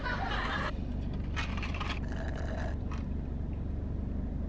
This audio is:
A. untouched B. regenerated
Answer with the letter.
A